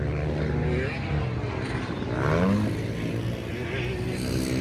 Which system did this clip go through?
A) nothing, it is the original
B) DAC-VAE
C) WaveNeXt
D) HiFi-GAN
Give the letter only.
A